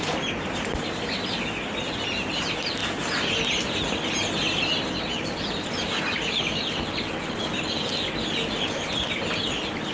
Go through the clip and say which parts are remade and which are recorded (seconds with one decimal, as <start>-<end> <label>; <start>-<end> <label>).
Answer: 0.0-9.9 recorded